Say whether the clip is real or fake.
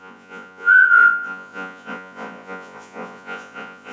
fake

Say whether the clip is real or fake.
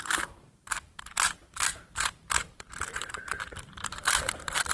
fake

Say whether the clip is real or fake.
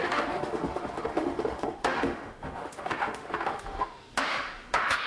fake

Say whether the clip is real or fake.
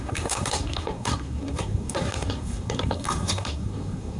fake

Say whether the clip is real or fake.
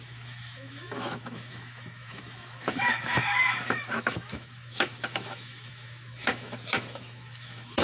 fake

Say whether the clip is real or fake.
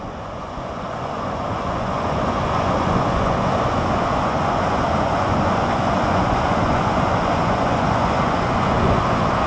fake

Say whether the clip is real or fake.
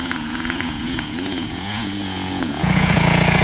fake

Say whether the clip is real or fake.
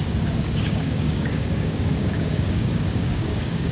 fake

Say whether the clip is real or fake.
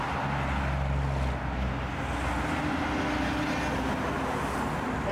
real